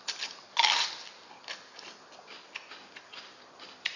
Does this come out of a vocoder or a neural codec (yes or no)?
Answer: no